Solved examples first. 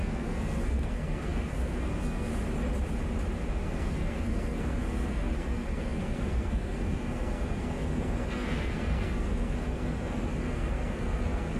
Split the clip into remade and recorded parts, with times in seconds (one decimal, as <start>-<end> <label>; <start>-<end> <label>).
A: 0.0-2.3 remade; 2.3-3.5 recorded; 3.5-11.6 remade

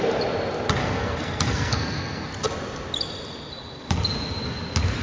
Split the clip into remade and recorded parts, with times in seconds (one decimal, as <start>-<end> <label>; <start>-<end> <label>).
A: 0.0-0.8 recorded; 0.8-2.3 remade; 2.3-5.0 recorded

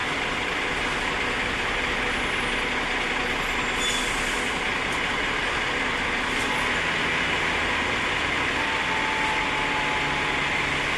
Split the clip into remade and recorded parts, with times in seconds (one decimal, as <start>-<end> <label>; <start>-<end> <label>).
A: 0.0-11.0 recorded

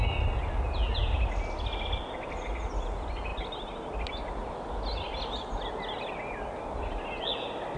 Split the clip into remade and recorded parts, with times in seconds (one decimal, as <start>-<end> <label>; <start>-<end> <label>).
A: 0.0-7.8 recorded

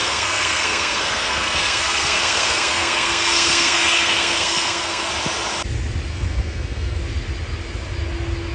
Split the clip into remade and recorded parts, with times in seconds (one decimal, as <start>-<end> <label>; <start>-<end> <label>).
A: 0.0-5.1 remade; 5.1-6.1 recorded; 6.1-7.0 remade; 7.0-8.5 recorded